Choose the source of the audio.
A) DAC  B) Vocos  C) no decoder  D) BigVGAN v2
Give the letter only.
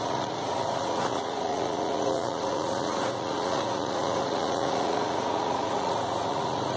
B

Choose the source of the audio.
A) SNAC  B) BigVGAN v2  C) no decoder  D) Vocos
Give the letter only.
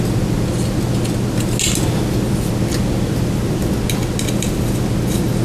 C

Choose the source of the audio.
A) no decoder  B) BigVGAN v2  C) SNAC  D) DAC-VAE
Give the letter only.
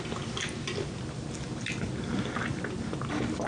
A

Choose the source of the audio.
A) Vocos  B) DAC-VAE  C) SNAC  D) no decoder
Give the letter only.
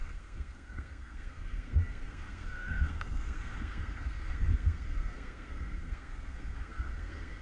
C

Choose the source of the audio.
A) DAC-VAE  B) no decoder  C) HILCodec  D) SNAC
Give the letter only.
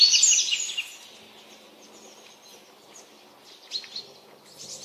B